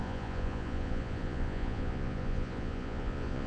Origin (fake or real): fake